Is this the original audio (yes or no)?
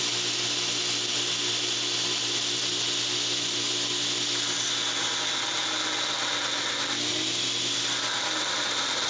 yes